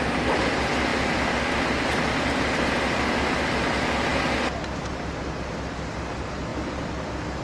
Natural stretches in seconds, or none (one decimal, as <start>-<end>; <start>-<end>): 0.0-7.4